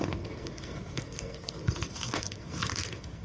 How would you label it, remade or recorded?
remade